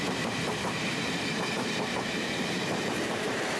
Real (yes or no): no